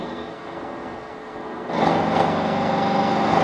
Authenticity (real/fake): fake